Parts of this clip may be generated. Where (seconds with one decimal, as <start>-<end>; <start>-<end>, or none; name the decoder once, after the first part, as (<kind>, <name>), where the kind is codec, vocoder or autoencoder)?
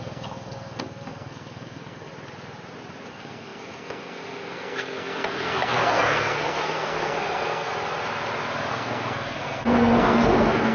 0.0-2.1 (codec, SNAC); 3.1-7.7; 8.7-10.7